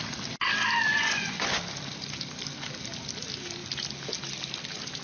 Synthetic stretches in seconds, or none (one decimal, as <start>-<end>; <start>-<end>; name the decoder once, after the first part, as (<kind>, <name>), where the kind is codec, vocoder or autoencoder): 0.9-1.5 (vocoder, Vocos)